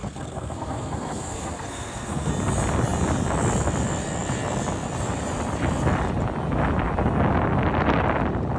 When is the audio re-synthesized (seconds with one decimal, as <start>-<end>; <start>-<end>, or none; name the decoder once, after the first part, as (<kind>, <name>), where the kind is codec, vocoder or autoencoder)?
0.0-2.3 (codec, SNAC)